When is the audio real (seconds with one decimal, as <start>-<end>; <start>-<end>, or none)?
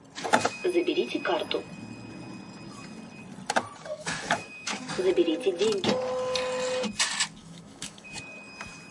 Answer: 0.0-3.9; 4.9-7.4; 8.1-8.9